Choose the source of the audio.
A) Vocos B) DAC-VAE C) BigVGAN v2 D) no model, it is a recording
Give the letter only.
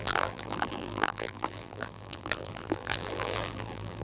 C